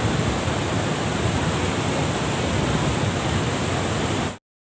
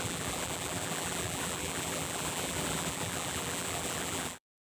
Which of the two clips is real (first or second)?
first